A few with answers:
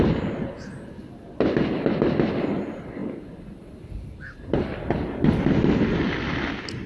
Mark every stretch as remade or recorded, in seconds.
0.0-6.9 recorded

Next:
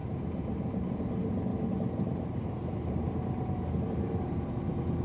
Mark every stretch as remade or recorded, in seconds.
0.0-1.1 remade; 1.1-1.5 recorded; 1.5-4.5 remade; 4.5-5.0 recorded

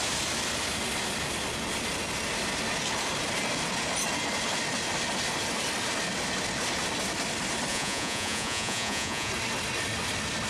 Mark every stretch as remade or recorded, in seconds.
0.0-7.7 recorded; 7.7-9.3 remade; 9.3-10.5 recorded